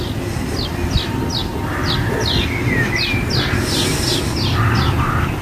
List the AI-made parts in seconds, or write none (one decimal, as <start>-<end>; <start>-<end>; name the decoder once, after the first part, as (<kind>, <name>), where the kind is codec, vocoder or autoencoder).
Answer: none